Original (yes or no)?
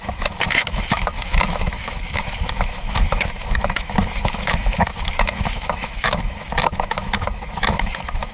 no